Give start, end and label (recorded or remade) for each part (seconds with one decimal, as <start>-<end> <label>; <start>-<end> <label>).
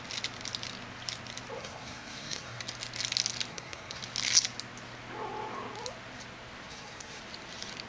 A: 0.0-1.6 recorded; 1.6-2.6 remade; 2.6-3.5 recorded; 3.5-4.0 remade; 4.0-6.7 recorded; 6.7-7.2 remade; 7.2-7.9 recorded